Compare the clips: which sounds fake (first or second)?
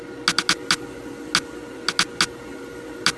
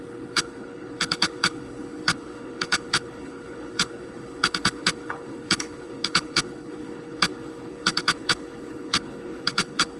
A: second